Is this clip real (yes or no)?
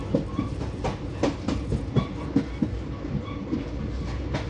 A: yes